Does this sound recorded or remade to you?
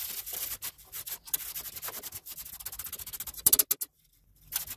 recorded